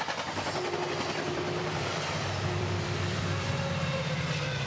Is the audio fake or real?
fake